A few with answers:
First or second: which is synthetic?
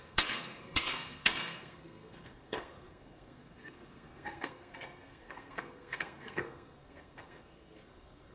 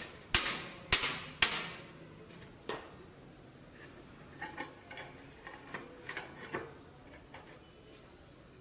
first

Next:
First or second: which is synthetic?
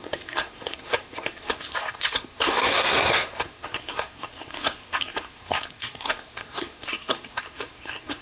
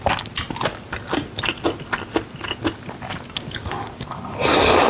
first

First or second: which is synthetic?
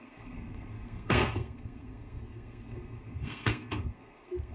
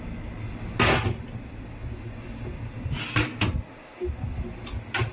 first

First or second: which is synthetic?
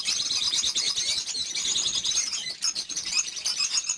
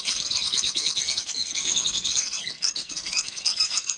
second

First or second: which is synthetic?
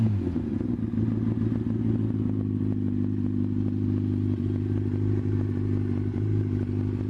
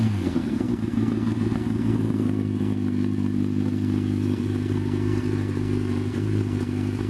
second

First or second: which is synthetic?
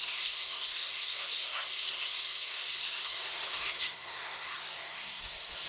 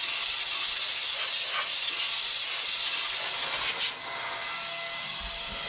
first